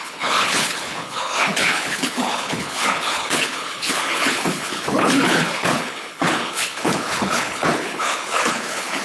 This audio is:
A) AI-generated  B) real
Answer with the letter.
A